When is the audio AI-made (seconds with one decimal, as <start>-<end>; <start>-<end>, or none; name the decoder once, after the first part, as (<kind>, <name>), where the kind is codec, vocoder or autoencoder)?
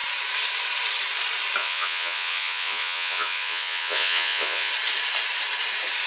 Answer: 1.6-4.7 (vocoder, Vocos)